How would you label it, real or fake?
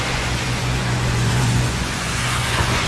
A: fake